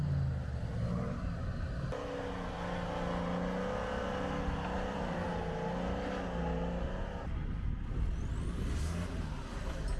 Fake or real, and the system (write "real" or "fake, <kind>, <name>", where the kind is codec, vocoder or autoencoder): real